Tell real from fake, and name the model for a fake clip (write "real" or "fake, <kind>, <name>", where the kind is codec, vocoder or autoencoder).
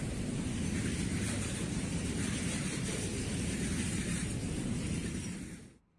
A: fake, vocoder, BigVGAN v2